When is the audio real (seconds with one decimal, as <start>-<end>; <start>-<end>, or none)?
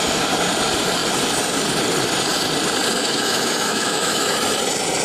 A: 0.0-3.0; 4.4-5.0